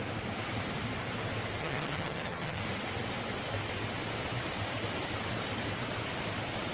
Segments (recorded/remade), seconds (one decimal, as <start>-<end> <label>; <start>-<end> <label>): 0.0-1.6 recorded; 1.6-2.6 remade; 2.6-6.7 recorded